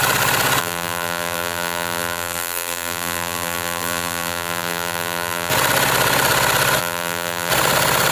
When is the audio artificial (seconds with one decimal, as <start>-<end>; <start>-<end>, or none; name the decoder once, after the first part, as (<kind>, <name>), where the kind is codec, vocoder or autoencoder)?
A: 0.6-5.5 (vocoder, BigVGAN v2); 6.8-7.5